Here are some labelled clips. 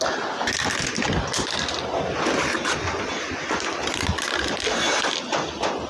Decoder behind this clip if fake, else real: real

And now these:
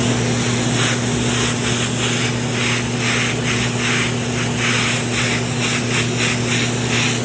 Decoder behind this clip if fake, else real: real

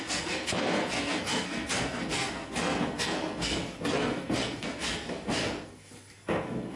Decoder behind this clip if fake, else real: fake, codec, SNAC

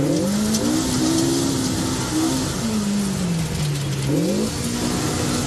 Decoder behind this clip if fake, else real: real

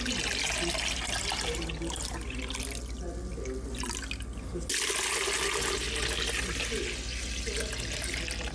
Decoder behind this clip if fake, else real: real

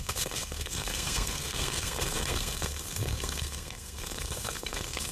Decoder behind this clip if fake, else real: fake, codec, SNAC